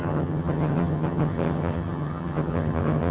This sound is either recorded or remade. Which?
remade